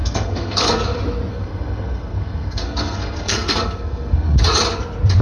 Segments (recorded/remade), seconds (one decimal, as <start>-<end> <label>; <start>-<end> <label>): 0.0-0.8 remade; 0.8-1.3 recorded; 1.3-4.4 remade; 4.4-5.2 recorded